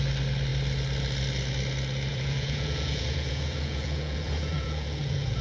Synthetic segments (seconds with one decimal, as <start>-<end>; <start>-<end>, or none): 2.1-5.4